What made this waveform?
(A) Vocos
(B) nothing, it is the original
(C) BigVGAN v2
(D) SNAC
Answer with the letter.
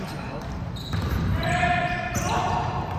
C